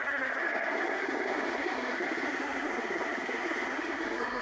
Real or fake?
fake